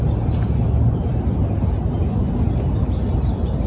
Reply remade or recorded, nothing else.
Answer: recorded